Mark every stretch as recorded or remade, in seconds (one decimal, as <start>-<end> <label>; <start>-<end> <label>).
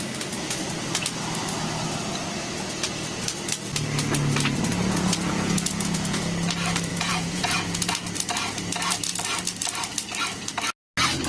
0.0-4.8 recorded; 4.8-6.2 remade; 6.2-6.9 recorded; 6.9-7.9 remade; 7.9-11.3 recorded